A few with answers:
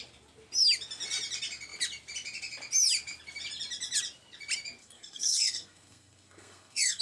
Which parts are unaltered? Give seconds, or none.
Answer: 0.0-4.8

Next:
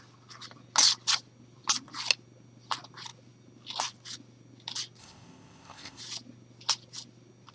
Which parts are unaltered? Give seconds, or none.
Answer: 0.0-5.0; 6.0-7.5

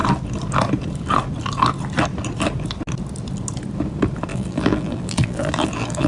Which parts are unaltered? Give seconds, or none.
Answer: 0.0-4.3

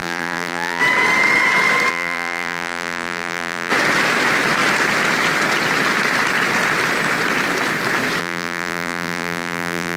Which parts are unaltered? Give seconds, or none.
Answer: 0.8-1.9; 3.7-8.2

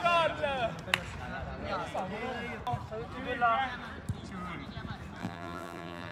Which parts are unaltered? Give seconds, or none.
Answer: 0.0-5.2